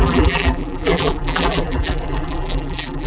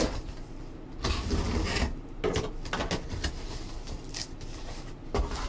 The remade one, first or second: first